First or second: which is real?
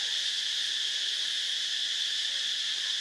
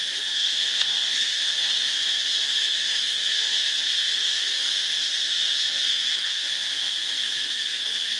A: first